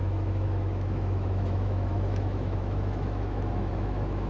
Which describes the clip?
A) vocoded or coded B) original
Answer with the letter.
A